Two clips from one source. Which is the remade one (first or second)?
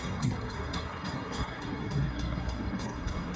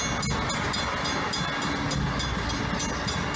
first